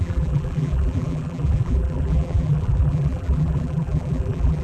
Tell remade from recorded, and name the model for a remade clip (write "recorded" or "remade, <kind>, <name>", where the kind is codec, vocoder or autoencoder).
remade, vocoder, BigVGAN v2